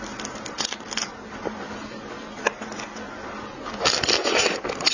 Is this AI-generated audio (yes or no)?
no